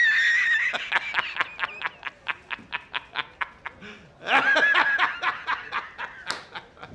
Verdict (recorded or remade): recorded